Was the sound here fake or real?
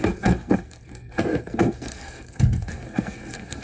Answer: fake